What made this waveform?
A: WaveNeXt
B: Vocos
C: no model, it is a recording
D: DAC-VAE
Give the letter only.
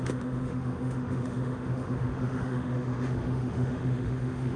D